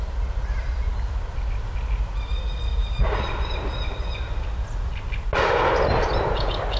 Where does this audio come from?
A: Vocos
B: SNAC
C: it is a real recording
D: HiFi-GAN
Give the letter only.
C